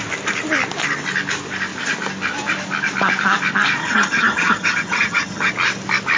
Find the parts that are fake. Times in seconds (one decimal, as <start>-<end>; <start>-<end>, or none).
3.8-5.5